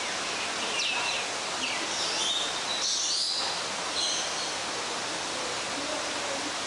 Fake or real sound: real